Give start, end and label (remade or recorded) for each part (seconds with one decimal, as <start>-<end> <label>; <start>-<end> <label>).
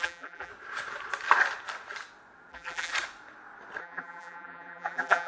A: 0.0-0.5 remade; 0.5-2.5 recorded; 2.5-2.9 remade; 2.9-3.8 recorded; 3.8-5.3 remade